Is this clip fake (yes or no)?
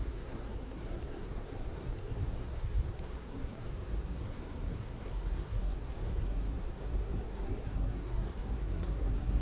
yes